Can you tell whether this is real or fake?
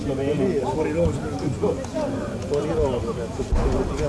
real